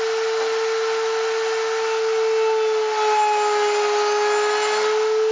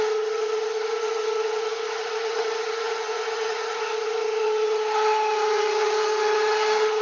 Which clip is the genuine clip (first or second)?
first